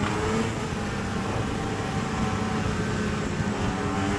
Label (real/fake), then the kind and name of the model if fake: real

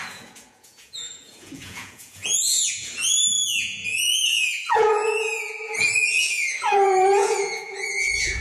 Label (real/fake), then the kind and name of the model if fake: fake, vocoder, Vocos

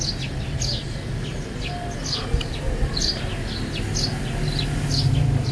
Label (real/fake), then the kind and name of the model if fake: real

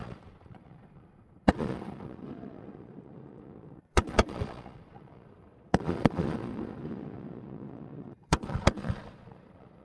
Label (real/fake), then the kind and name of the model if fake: fake, vocoder, Vocos